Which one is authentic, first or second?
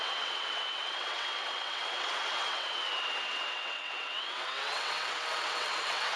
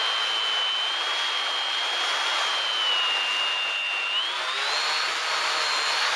second